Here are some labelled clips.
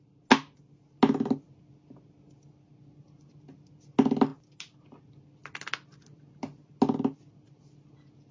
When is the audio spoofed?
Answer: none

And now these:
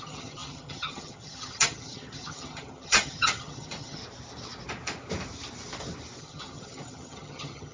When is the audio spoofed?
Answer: 0.0-4.0 (vocoder, HiFi-GAN); 6.2-7.7

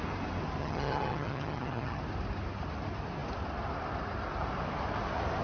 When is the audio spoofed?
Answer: 0.6-2.0 (vocoder, HiFi-GAN)

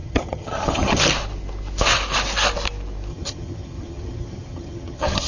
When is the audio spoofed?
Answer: 0.0-1.0 (vocoder, HiFi-GAN); 3.1-5.3